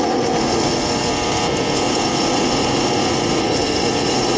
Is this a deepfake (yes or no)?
yes